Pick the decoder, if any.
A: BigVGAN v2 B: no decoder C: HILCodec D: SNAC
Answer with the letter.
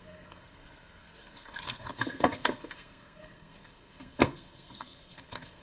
D